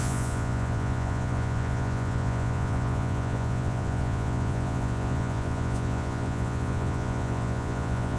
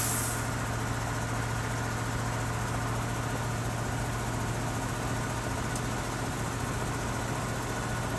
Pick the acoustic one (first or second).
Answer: second